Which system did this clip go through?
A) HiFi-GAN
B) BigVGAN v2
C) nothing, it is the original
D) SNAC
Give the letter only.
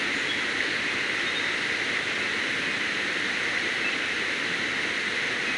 C